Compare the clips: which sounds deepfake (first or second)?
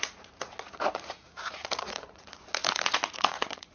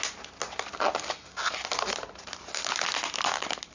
first